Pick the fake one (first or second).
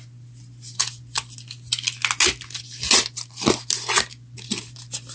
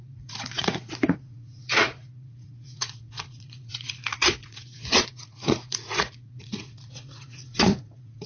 second